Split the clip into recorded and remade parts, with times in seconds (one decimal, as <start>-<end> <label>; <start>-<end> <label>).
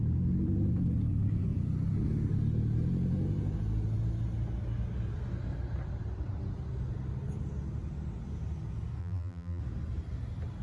0.0-9.0 recorded; 9.0-9.6 remade; 9.6-10.6 recorded